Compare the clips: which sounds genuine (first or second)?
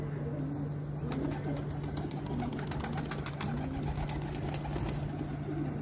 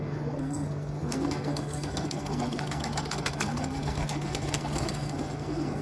first